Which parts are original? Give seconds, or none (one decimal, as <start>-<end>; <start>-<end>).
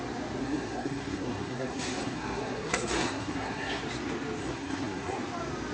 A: 0.0-0.4; 3.8-4.4; 5.2-5.7